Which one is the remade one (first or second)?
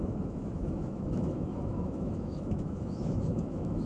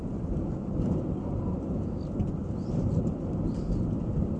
first